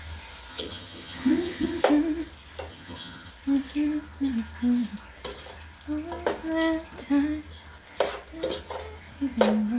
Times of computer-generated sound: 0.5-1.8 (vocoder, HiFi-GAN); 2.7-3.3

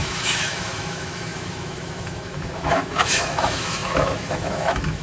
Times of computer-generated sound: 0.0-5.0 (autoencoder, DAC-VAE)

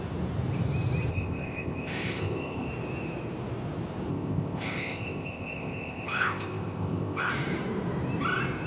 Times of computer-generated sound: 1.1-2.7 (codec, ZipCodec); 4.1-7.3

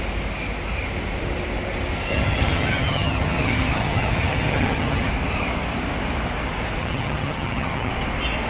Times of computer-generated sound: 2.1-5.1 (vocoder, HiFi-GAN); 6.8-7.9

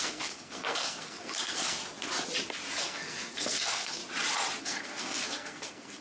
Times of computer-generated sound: 0.0-1.8 (codec, SNAC); 2.8-4.0; 4.6-6.0